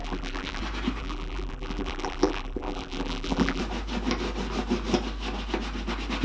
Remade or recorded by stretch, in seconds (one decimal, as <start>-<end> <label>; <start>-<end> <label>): 0.0-0.6 remade; 0.6-1.0 recorded; 1.0-3.6 remade; 3.6-6.2 recorded